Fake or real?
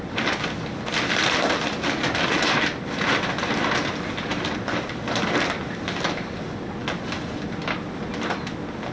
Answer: real